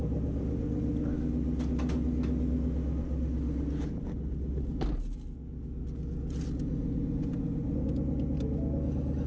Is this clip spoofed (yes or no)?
no